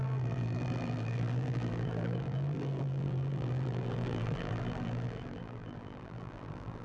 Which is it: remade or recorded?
remade